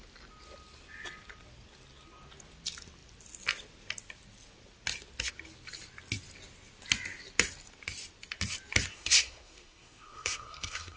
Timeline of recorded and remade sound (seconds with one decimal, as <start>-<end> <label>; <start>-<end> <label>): 0.0-8.9 recorded; 8.9-11.0 remade

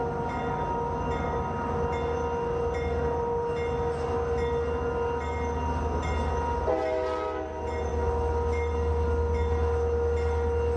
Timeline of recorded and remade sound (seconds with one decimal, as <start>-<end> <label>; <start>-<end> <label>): 0.0-10.8 recorded

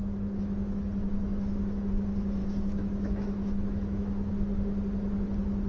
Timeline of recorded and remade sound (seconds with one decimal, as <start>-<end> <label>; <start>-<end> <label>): 0.0-1.9 remade; 1.9-2.4 recorded; 2.4-4.3 remade; 4.3-5.7 recorded

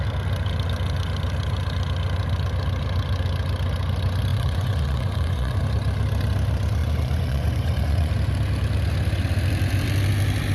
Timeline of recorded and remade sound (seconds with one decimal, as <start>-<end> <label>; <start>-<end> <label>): 0.0-4.3 recorded; 4.3-5.6 remade; 5.6-6.8 recorded; 6.8-8.1 remade; 8.1-10.5 recorded

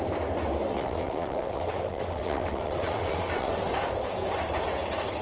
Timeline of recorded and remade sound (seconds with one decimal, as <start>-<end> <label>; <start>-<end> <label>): 0.0-0.7 recorded; 0.7-3.5 remade; 3.5-5.2 recorded

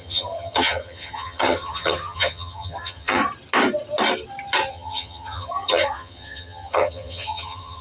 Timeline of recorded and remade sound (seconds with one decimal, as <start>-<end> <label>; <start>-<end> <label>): 0.0-3.2 remade; 3.2-4.7 recorded; 4.7-7.8 remade

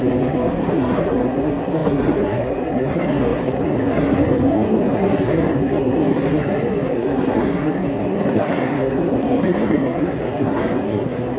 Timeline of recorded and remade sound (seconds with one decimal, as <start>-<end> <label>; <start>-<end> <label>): 0.0-11.4 remade

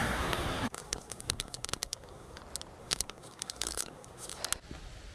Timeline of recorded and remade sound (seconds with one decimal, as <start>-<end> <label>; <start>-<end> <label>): 0.0-2.4 remade; 2.4-2.8 recorded; 2.8-4.4 remade; 4.4-5.1 recorded